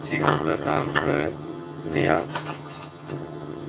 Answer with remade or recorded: remade